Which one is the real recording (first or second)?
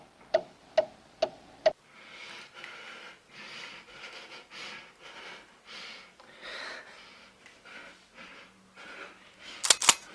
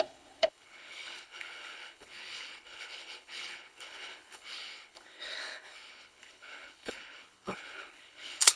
first